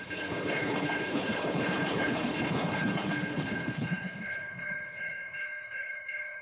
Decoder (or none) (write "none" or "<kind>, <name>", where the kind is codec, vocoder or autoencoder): codec, HILCodec